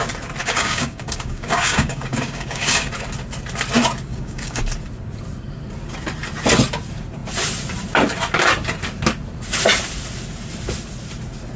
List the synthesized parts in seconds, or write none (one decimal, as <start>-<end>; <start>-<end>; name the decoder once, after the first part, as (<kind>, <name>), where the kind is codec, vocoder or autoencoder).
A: 0.4-2.9 (codec, DAC); 4.1-4.6